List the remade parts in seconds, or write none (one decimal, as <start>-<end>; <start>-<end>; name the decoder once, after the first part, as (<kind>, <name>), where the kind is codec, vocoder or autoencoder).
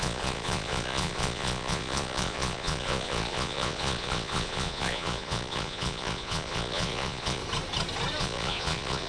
0.0-7.4 (vocoder, Vocos); 8.2-9.1